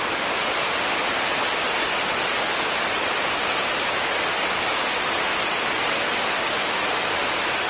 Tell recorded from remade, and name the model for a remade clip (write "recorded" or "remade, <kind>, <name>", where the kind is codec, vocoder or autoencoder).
recorded